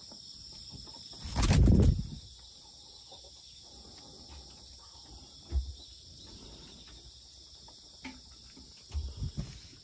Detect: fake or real real